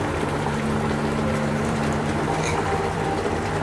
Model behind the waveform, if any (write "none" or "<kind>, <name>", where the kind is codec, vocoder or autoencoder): vocoder, BigVGAN v2